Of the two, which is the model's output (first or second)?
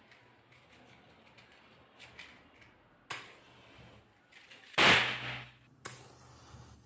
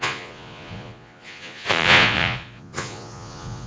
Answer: second